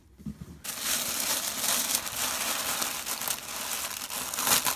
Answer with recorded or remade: recorded